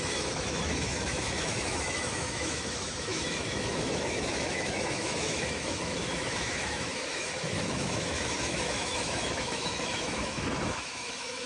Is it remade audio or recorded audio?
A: remade